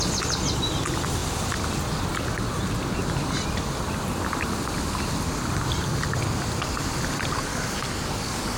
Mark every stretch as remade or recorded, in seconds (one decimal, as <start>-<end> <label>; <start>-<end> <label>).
0.0-7.5 recorded; 7.5-8.6 remade